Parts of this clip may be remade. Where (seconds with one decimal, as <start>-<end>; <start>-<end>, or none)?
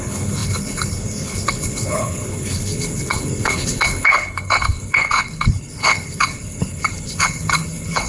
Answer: 0.0-8.1